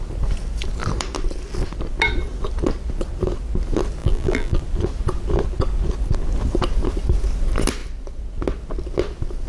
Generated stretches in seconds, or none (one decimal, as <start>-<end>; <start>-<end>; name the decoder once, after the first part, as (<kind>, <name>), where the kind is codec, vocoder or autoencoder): 4.0-4.6 (vocoder, BigVGAN v2)